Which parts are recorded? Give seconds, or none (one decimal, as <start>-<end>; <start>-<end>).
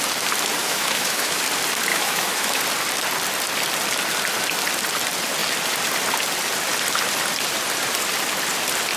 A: 0.0-0.6; 1.4-1.9; 2.6-9.0